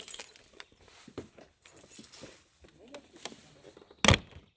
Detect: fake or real real